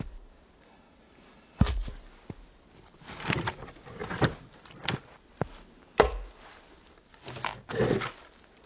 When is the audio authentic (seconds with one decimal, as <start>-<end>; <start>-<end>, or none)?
0.0-8.7